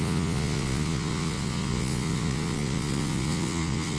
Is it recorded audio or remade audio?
remade